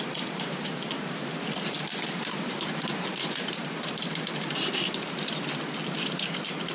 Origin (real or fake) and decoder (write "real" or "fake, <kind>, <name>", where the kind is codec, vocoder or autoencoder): fake, vocoder, BigVGAN v2